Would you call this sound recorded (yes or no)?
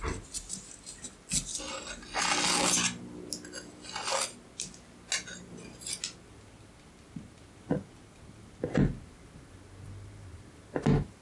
yes